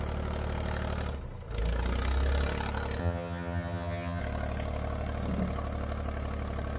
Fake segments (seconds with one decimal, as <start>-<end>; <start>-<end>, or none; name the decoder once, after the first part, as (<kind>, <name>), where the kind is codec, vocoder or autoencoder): 3.0-4.2 (vocoder, HiFi-GAN)

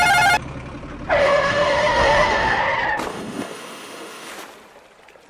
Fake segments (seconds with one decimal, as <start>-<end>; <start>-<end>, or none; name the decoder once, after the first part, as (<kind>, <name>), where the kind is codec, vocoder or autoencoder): 1.2-2.6 (autoencoder, DAC-VAE); 3.1-4.3

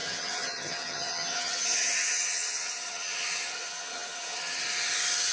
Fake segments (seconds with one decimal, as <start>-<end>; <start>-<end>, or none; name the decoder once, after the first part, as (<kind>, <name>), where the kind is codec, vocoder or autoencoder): 0.0-4.6 (vocoder, HiFi-GAN)

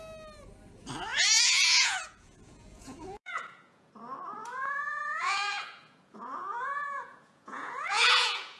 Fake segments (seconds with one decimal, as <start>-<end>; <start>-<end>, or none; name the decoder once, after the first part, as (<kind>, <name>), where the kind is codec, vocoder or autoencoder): 1.1-3.9 (vocoder, Vocos); 4.4-8.6

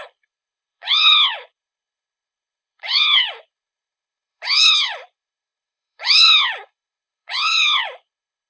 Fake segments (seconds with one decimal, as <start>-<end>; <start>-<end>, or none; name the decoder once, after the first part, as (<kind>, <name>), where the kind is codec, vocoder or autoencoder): 0.0-8.5 (codec, HILCodec)

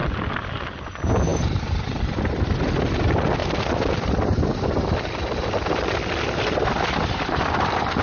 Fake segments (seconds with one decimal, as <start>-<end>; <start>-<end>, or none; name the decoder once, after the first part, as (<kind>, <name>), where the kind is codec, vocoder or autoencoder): 0.0-0.6 (vocoder, BigVGAN v2); 1.3-2.6; 3.4-8.0

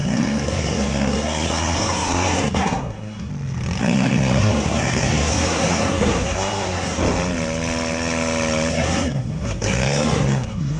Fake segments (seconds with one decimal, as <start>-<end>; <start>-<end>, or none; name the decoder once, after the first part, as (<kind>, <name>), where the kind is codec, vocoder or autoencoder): 0.0-3.3 (codec, SNAC); 3.8-7.0; 8.7-10.8